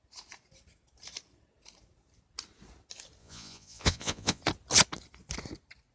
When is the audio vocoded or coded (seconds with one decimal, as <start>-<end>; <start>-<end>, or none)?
3.2-4.4